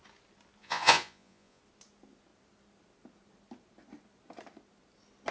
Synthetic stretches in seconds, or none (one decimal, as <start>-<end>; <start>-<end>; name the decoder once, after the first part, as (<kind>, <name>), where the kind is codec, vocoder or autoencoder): 0.6-1.6 (vocoder, Vocos)